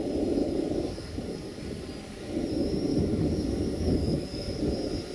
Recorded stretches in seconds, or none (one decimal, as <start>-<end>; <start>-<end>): 0.0-0.4; 1.6-2.9; 4.6-5.1